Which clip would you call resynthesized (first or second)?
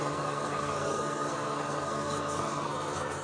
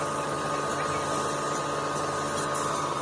first